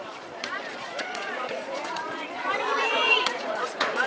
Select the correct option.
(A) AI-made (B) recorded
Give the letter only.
A